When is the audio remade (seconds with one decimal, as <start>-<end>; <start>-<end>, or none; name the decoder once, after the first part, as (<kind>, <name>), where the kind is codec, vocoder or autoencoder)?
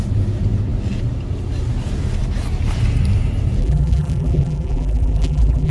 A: 3.6-5.7 (vocoder, BigVGAN v2)